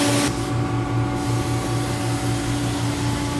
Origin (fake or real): real